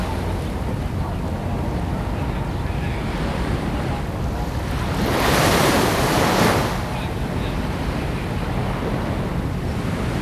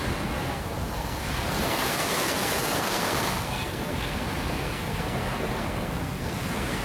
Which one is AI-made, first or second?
second